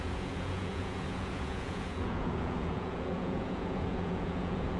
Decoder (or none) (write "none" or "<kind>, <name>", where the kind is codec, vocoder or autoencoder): vocoder, Vocos